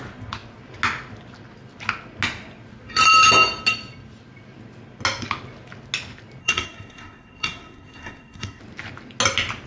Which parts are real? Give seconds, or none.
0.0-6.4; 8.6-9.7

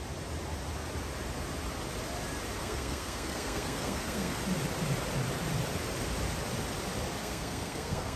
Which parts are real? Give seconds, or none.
0.0-2.6; 4.4-7.2

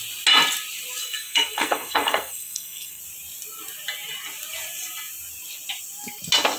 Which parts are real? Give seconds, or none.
0.0-1.0; 3.0-6.6

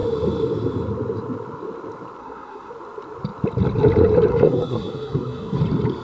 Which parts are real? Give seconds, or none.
0.0-2.2; 2.7-4.3; 5.6-6.0

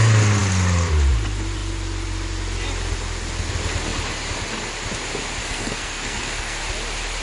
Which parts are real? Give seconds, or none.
0.0-5.4; 6.6-7.2

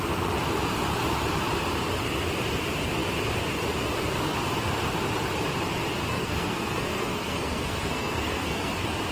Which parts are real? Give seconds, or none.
0.0-6.1; 8.7-9.1